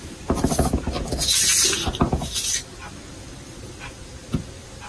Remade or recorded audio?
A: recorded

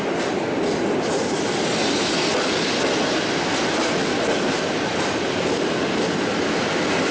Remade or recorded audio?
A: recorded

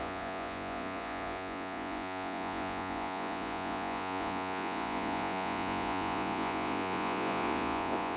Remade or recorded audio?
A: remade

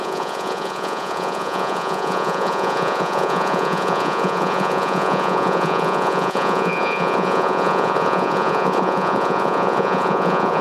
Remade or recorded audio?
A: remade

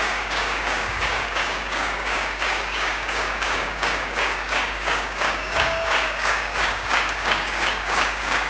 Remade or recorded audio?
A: remade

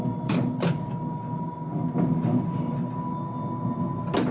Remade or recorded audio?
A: recorded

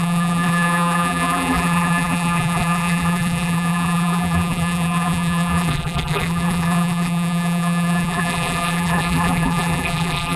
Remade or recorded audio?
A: remade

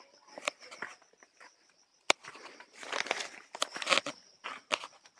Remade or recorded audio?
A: recorded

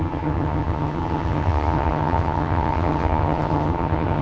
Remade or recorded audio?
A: remade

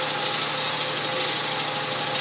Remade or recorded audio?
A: recorded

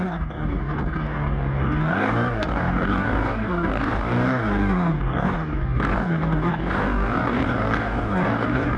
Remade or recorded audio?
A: remade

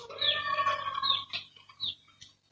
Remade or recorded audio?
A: recorded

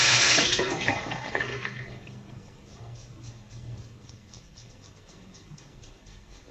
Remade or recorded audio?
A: remade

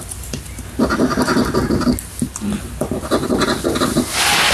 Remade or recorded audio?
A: recorded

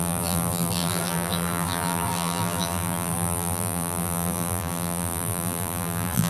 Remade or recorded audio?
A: remade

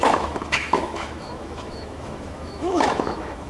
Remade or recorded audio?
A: remade